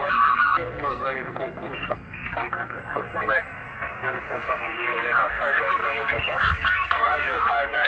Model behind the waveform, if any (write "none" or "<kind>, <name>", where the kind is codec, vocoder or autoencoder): codec, SNAC